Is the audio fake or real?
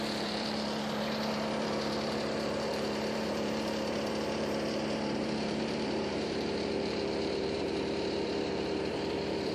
fake